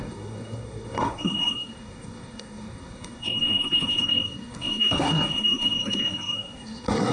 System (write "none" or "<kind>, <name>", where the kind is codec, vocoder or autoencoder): codec, SNAC